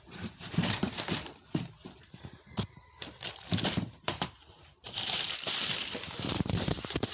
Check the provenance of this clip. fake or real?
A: fake